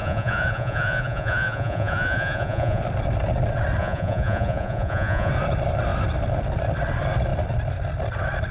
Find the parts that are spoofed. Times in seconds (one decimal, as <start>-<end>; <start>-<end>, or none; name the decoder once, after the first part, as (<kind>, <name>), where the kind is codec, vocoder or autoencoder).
0.0-2.8 (vocoder, Vocos); 3.8-5.3